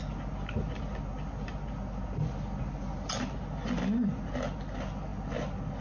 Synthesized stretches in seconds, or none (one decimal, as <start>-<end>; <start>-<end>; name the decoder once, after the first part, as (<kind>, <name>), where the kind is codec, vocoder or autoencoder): none